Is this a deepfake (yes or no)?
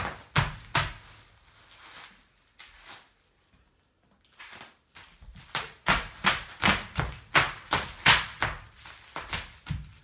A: no